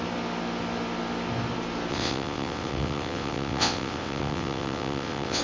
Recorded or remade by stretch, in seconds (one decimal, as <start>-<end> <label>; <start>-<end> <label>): 0.0-1.9 recorded; 1.9-5.4 remade